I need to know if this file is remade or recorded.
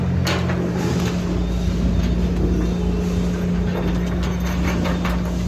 recorded